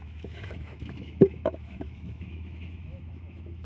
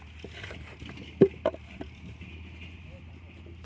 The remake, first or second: first